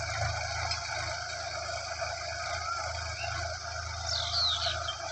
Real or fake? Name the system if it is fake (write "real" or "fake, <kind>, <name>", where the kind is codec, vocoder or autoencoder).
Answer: real